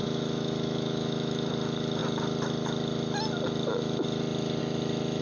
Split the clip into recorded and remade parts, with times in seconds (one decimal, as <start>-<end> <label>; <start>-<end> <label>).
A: 0.0-1.5 remade; 1.5-5.2 recorded

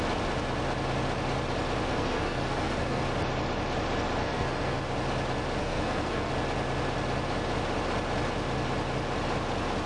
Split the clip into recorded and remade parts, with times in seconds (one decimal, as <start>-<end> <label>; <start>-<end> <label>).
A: 0.0-1.9 recorded; 1.9-3.0 remade; 3.0-4.2 recorded; 4.2-4.8 remade; 4.8-5.6 recorded; 5.6-6.3 remade; 6.3-9.9 recorded

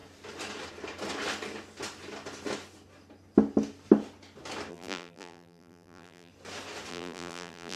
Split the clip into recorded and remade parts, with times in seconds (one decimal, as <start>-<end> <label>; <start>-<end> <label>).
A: 0.0-4.7 recorded; 4.7-6.3 remade; 6.3-6.9 recorded; 6.9-7.8 remade

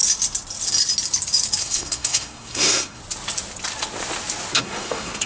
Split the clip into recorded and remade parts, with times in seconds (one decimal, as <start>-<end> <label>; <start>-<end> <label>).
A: 0.0-1.6 recorded; 1.6-3.0 remade; 3.0-4.6 recorded; 4.6-5.3 remade

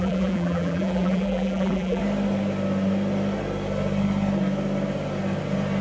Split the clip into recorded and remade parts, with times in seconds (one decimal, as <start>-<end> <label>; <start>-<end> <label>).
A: 0.0-2.0 remade; 2.0-5.8 recorded

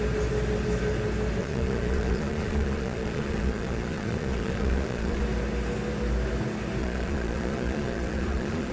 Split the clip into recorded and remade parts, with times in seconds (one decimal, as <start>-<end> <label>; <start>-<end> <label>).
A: 0.0-1.4 recorded; 1.4-5.2 remade; 5.2-6.8 recorded; 6.8-8.7 remade